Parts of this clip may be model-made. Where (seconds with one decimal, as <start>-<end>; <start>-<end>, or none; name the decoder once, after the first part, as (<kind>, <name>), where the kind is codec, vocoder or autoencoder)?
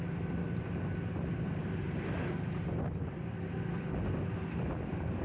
none